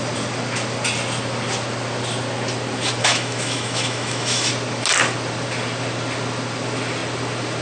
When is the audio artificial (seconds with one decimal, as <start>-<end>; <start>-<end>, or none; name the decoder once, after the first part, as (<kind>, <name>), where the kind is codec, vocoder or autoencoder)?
3.0-4.5 (autoencoder, DAC-VAE)